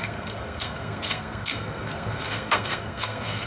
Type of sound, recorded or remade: remade